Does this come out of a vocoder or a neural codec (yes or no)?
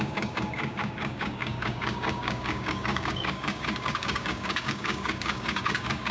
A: yes